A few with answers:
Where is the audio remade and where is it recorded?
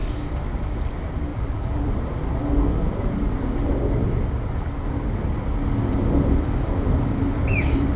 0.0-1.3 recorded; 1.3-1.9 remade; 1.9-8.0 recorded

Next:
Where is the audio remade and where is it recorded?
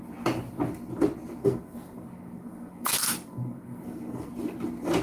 0.0-1.4 recorded; 1.4-4.3 remade; 4.3-5.0 recorded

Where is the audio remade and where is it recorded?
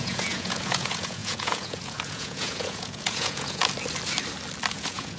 0.0-3.6 remade; 3.6-4.7 recorded; 4.7-5.2 remade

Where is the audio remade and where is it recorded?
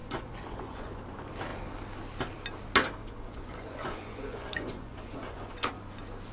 0.0-1.0 remade; 1.0-3.0 recorded; 3.0-5.7 remade; 5.7-6.3 recorded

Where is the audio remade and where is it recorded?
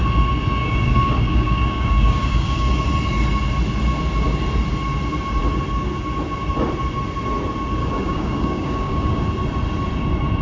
0.0-0.6 recorded; 0.6-2.7 remade; 2.7-7.8 recorded; 7.8-9.2 remade; 9.2-10.4 recorded